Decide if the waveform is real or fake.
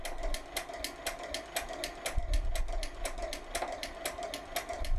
real